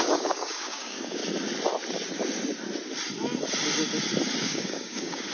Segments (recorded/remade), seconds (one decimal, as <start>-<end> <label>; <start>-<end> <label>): 0.0-1.2 remade; 1.2-4.4 recorded; 4.4-5.3 remade